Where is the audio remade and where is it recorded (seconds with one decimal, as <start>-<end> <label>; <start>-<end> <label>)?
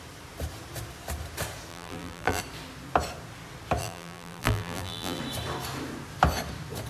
0.0-1.7 recorded; 1.7-2.4 remade; 2.4-3.8 recorded; 3.8-5.2 remade; 5.2-6.9 recorded